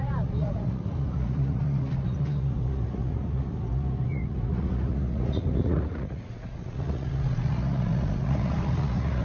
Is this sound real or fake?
fake